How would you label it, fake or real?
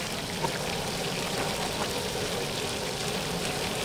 fake